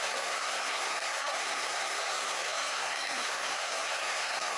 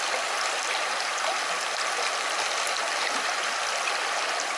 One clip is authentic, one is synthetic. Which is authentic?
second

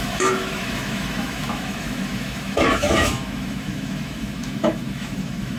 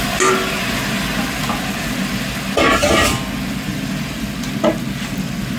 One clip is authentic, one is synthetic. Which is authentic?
second